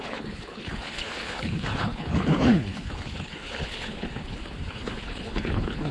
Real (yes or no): no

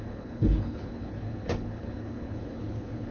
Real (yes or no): no